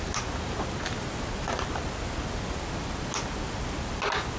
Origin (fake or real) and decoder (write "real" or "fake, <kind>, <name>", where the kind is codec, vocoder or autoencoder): real